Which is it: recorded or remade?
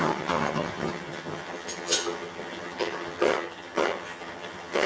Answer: remade